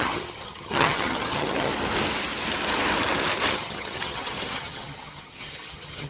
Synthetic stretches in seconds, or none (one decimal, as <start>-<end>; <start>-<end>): 0.0-1.7; 3.5-6.1